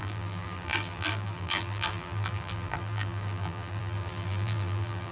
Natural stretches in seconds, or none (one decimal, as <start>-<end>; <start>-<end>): none